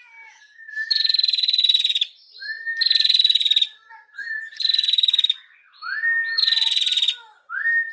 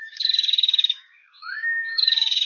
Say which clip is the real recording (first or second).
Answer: first